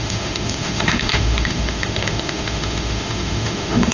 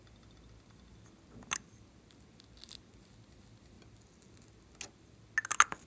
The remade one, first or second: first